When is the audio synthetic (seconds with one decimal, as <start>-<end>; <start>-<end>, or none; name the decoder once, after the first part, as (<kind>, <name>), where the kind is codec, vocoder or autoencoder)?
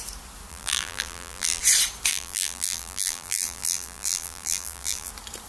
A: 0.5-1.6 (vocoder, BigVGAN v2); 2.1-5.1